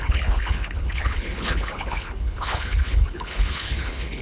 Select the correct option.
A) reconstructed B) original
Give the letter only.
A